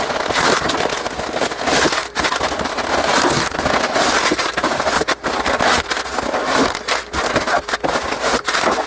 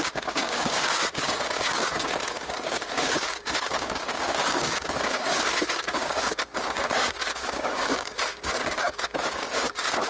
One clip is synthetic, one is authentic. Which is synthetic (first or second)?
second